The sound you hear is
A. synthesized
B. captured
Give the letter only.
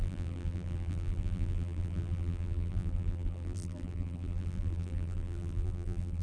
A